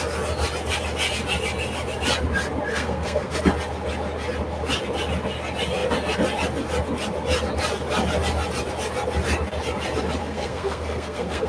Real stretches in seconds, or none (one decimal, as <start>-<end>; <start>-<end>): 0.0-2.7; 3.4-10.2